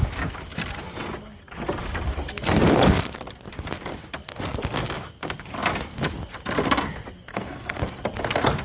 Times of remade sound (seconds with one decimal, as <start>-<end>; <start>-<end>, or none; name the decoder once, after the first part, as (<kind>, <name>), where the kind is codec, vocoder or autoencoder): 7.3-7.8 (codec, SNAC)